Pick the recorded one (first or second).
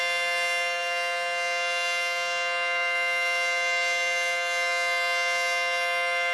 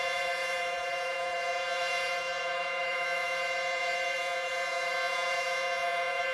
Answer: first